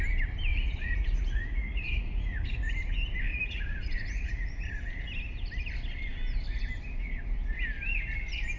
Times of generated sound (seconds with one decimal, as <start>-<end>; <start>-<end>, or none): 0.5-2.7; 3.3-4.8